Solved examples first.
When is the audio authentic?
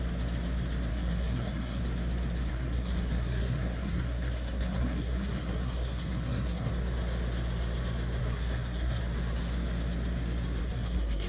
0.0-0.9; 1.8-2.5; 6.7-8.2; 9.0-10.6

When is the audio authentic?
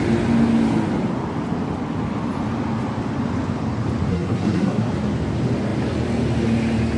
0.0-4.1; 4.9-7.0